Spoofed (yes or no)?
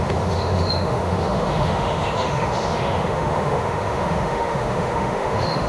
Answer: yes